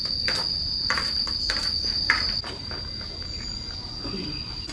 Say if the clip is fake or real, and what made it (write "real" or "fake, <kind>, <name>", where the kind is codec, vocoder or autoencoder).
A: fake, vocoder, BigVGAN v2